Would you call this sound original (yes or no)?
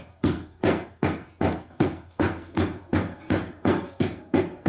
no